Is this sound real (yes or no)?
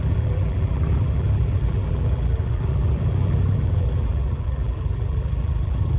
no